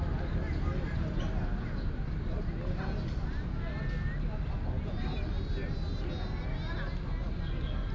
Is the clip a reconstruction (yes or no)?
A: no